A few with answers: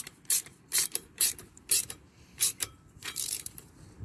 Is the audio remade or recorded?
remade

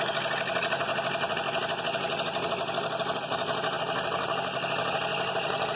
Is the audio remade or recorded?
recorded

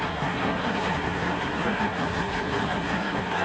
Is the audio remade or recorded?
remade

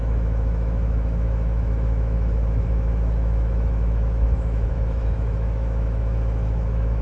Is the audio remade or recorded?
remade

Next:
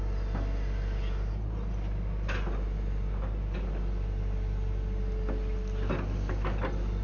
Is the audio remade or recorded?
recorded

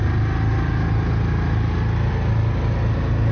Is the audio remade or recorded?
recorded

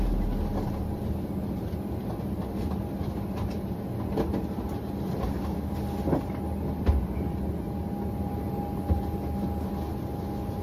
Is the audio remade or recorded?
recorded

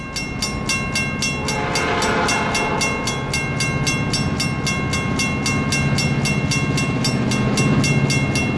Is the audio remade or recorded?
recorded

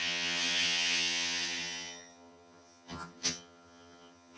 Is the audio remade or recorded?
remade